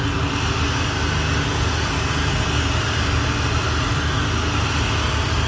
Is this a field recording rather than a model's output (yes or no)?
yes